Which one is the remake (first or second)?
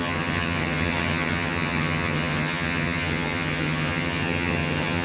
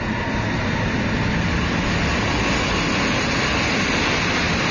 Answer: first